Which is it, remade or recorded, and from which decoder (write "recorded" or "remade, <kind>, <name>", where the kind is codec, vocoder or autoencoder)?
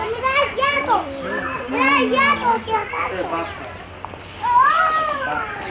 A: recorded